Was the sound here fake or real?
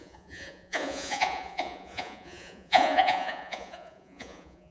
fake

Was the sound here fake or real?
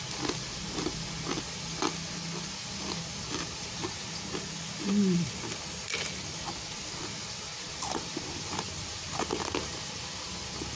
real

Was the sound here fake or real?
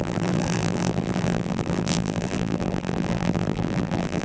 fake